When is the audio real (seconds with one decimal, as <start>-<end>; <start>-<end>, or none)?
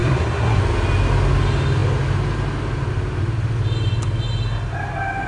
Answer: 0.6-5.3